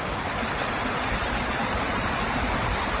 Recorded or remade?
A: recorded